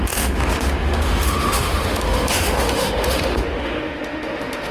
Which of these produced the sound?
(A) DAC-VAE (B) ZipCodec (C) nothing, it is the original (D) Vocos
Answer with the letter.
A